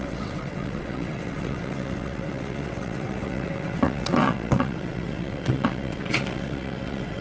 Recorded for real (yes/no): no